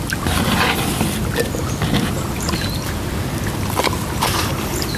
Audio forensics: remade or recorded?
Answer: recorded